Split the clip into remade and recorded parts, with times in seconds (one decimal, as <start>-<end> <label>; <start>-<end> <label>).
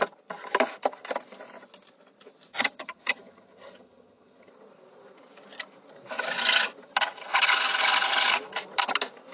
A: 0.0-2.5 recorded; 2.5-4.5 remade; 4.5-9.3 recorded